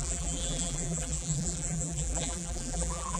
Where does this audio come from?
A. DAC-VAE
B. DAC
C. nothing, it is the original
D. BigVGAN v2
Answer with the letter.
D